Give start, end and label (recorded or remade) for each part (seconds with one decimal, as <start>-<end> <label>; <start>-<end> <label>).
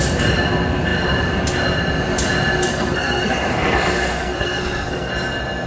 0.0-2.7 recorded; 2.7-5.1 remade; 5.1-5.7 recorded